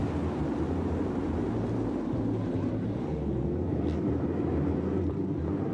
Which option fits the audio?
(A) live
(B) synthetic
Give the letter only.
B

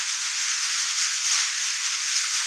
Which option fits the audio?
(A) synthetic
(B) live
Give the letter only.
A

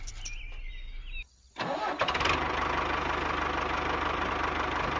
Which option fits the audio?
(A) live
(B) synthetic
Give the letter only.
A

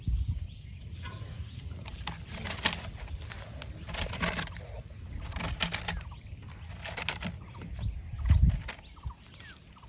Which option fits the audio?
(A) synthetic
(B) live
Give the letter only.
B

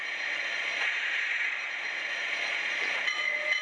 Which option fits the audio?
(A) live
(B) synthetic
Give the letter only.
B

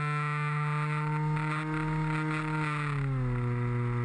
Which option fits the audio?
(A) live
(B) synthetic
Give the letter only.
A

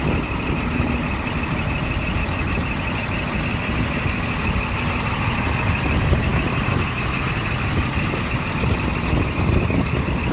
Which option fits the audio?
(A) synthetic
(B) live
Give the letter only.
B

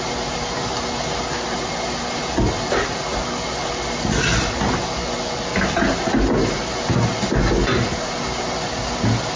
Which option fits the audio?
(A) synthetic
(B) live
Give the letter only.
B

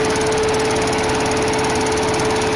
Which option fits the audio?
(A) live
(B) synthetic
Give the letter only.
A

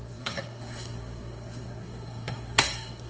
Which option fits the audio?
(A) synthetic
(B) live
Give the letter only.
A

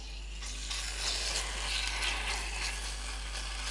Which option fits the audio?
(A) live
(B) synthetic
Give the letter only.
A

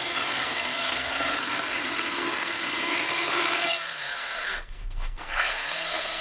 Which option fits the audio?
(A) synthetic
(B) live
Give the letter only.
A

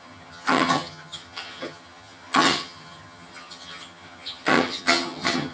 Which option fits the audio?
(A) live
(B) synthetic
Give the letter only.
B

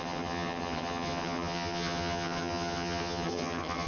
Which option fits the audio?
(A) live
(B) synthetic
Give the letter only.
B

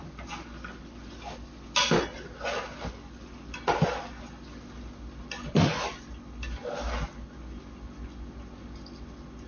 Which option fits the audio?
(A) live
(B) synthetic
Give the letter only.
A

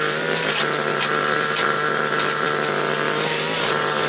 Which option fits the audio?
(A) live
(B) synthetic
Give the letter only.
B